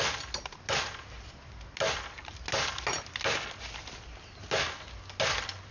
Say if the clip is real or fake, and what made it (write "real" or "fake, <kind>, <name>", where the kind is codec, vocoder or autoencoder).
real